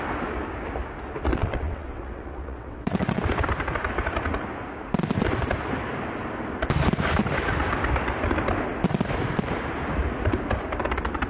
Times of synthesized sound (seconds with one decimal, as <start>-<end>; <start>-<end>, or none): 1.3-3.2